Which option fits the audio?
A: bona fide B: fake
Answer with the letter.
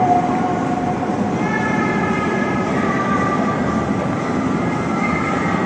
A